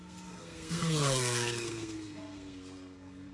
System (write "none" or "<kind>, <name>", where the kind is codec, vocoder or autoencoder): codec, SNAC